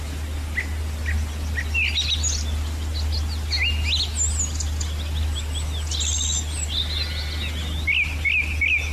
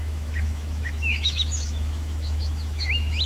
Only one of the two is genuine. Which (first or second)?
first